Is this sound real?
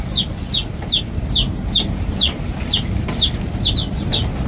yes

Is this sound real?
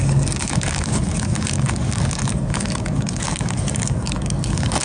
no